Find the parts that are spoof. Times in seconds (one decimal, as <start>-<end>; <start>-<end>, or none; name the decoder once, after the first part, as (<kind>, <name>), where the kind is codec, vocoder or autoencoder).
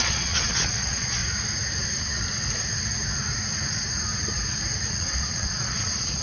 0.0-1.2 (vocoder, Vocos); 4.9-6.2